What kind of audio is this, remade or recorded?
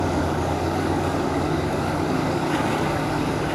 remade